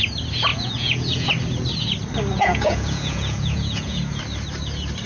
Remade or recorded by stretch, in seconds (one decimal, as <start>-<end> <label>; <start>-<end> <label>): 0.0-0.5 recorded; 0.5-1.3 remade; 1.3-2.3 recorded; 2.3-4.0 remade; 4.0-5.1 recorded